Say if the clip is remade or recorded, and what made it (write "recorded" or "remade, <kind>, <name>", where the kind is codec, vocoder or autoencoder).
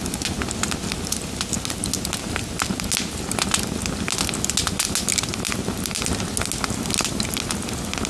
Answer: recorded